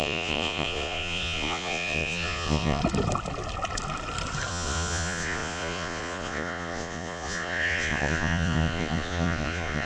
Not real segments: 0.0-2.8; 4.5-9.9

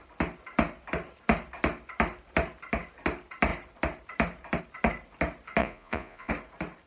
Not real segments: 5.6-6.3